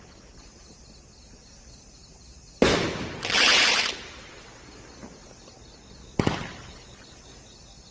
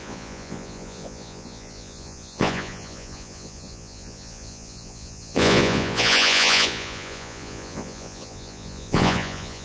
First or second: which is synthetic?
second